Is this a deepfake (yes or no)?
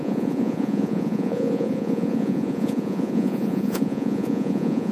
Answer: yes